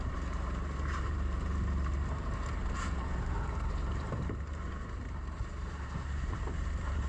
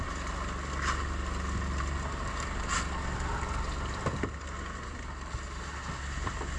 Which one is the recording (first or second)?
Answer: second